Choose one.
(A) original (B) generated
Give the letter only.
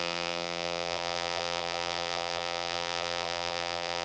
B